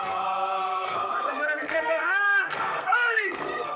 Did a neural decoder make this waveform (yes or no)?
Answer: yes